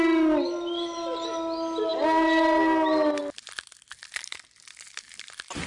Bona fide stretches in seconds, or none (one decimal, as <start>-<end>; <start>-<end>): 0.0-5.7